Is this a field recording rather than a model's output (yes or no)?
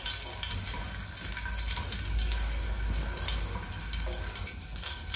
yes